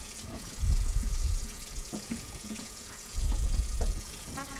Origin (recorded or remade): remade